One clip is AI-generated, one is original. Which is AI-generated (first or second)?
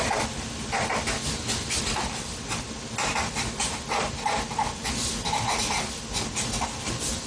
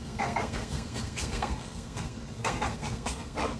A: second